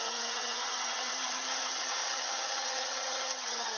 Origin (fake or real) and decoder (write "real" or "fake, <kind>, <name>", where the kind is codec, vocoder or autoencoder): fake, vocoder, HiFi-GAN